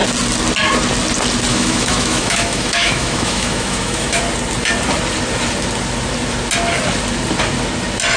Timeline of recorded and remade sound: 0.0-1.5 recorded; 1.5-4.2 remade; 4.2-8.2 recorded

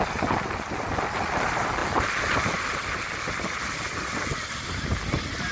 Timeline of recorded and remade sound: 0.0-5.5 recorded

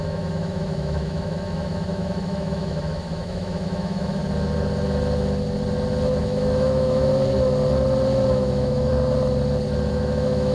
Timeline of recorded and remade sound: 0.0-4.2 remade; 4.2-6.2 recorded; 6.2-7.1 remade; 7.1-8.3 recorded; 8.3-8.9 remade; 8.9-9.9 recorded; 9.9-10.5 remade

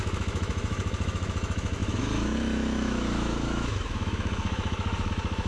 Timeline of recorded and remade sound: 0.0-5.5 remade

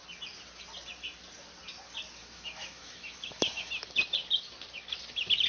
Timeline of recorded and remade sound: 0.0-2.2 recorded; 2.2-3.7 remade; 3.7-5.5 recorded